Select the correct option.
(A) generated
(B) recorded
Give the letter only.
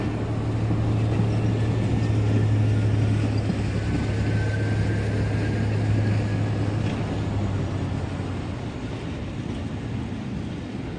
B